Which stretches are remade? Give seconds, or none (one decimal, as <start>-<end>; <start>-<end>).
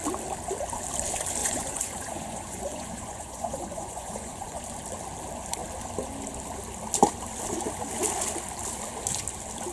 1.4-4.6